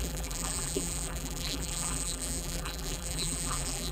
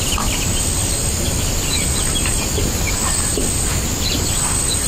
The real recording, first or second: second